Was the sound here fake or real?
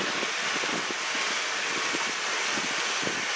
fake